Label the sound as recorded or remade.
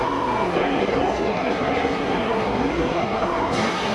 remade